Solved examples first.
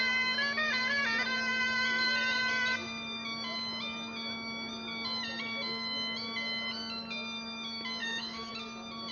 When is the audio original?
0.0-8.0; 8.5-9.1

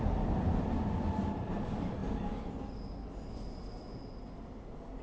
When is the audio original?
0.0-5.0